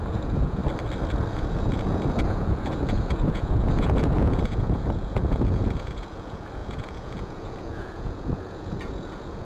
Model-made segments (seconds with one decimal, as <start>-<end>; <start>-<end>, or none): 0.0-0.6; 1.3-9.4

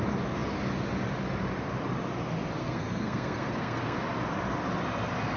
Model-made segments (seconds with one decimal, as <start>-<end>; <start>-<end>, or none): 2.6-4.0

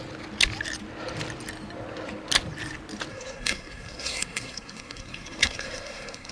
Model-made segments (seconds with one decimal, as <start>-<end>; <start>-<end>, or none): 3.1-6.3

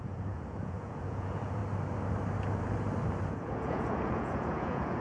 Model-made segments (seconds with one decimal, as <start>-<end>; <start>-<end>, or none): 0.0-1.6; 3.3-5.0

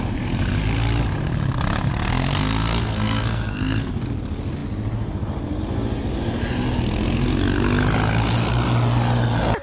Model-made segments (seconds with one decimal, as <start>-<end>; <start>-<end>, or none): 1.9-3.9